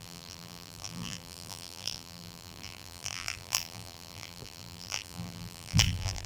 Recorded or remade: remade